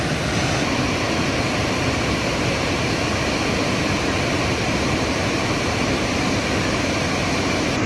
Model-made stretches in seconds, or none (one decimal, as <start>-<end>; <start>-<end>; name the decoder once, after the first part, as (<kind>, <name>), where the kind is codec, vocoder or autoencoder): 0.0-0.4 (vocoder, BigVGAN v2); 1.2-3.0; 3.9-7.9